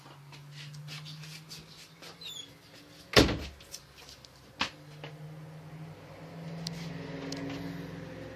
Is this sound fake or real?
real